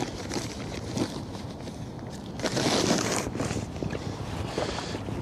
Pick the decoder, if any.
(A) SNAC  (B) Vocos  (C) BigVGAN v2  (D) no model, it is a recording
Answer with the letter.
D